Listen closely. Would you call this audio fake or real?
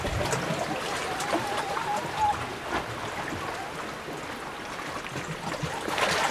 real